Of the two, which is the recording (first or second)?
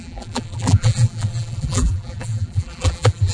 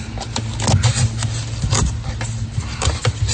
second